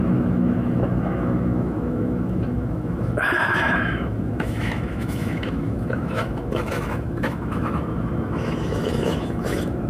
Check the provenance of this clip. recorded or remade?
remade